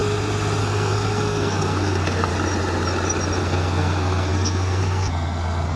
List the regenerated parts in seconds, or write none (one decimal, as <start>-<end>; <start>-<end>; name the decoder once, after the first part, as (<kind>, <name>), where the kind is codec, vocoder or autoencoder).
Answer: 0.6-2.3 (codec, SNAC); 3.4-5.8